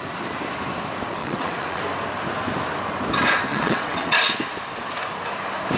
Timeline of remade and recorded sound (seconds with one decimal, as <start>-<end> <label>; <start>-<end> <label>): 0.0-1.2 recorded; 1.2-1.8 remade; 1.8-3.5 recorded; 3.5-4.2 remade; 4.2-5.8 recorded